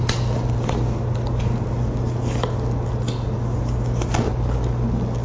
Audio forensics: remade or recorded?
recorded